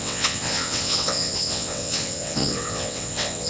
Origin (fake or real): fake